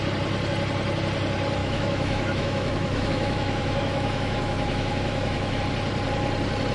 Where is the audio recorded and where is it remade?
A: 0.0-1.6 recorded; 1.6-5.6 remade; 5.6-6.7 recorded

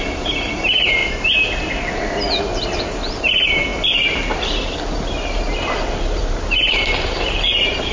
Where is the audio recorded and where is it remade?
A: 0.0-1.0 remade; 1.0-2.4 recorded; 2.4-3.7 remade; 3.7-4.5 recorded; 4.5-7.9 remade

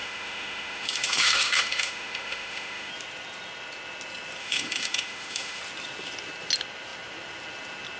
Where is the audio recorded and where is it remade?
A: 0.0-2.9 remade; 2.9-4.4 recorded; 4.4-5.6 remade; 5.6-8.0 recorded

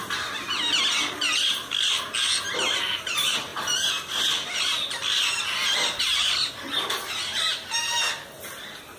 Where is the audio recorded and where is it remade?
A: 0.0-9.0 recorded

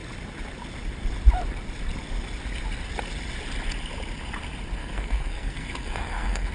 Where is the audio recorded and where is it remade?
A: 0.0-4.8 recorded; 4.8-6.5 remade